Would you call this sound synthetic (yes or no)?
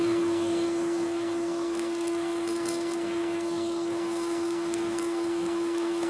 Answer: yes